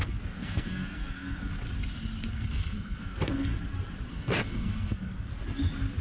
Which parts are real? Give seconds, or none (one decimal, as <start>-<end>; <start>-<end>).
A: 1.5-2.3; 3.5-4.1; 5.3-6.0